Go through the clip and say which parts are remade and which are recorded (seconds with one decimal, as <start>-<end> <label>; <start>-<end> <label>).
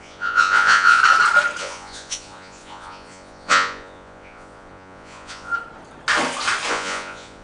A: 0.0-1.0 remade; 1.0-1.6 recorded; 1.6-5.5 remade; 5.5-6.7 recorded; 6.7-7.4 remade